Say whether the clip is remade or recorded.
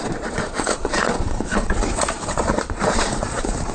remade